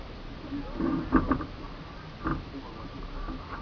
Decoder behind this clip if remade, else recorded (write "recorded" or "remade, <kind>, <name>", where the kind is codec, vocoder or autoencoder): recorded